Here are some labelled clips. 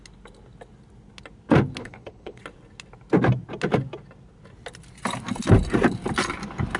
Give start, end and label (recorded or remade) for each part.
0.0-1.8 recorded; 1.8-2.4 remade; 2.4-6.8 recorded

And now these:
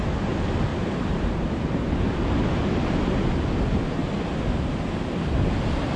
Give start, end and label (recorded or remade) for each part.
0.0-0.7 recorded; 0.7-2.4 remade; 2.4-6.0 recorded

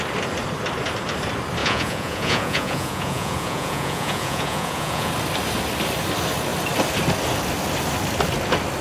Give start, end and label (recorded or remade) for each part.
0.0-1.6 recorded; 1.6-5.1 remade; 5.1-8.8 recorded

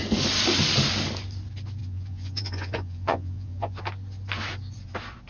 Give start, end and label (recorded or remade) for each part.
0.0-1.8 recorded; 1.8-3.8 remade; 3.8-5.3 recorded

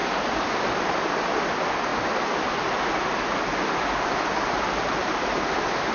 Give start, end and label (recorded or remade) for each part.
0.0-5.9 recorded

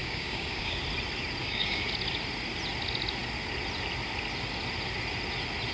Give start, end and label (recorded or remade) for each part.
0.0-0.8 remade; 0.8-1.4 recorded; 1.4-1.9 remade; 1.9-5.7 recorded

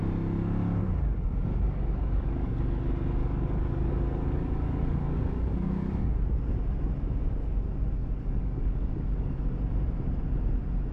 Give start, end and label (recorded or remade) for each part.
0.0-1.5 recorded; 1.5-2.6 remade; 2.6-3.2 recorded; 3.2-6.1 remade; 6.1-8.0 recorded; 8.0-9.4 remade; 9.4-10.9 recorded

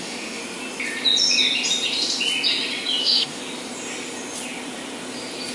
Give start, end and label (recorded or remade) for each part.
0.0-0.4 remade; 0.4-3.0 recorded; 3.0-3.4 remade; 3.4-5.5 recorded